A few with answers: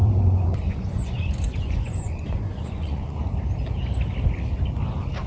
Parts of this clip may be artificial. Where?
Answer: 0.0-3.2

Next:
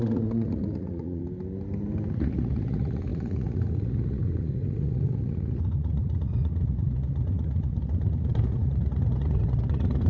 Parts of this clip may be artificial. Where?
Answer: 0.0-1.2; 2.1-10.1

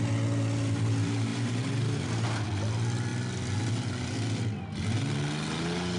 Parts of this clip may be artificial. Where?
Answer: none

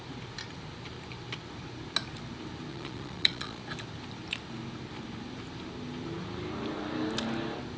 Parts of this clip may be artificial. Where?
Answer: 2.7-3.6

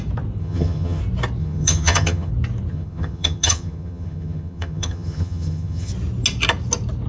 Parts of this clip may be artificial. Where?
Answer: 0.4-1.0; 1.4-2.3; 2.7-5.9

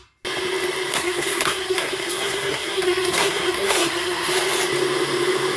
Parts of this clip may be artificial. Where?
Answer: 0.9-4.3